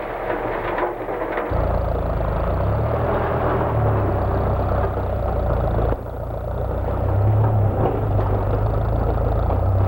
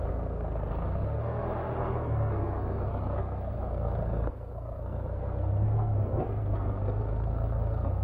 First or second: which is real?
first